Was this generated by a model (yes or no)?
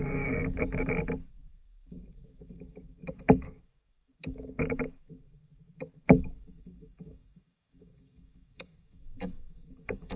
yes